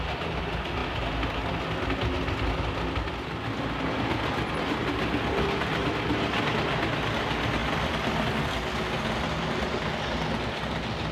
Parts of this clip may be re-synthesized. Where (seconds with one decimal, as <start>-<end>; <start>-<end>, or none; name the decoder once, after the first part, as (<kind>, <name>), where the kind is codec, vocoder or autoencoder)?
none